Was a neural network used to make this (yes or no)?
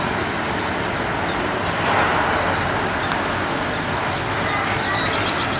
no